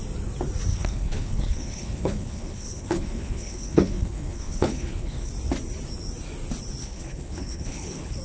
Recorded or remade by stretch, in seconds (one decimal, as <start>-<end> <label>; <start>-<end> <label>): 0.0-0.7 recorded; 0.7-5.3 remade; 5.3-6.8 recorded; 6.8-8.2 remade